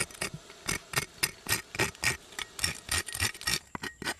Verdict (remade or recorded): recorded